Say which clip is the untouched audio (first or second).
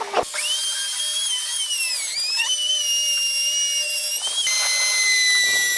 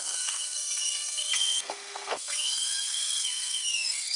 first